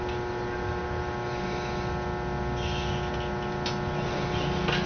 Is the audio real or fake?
real